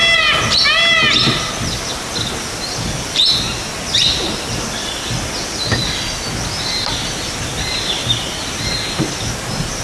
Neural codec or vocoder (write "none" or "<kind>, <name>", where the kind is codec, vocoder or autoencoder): none